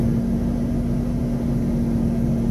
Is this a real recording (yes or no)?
yes